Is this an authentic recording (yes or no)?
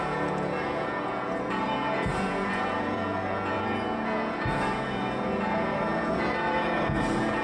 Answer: no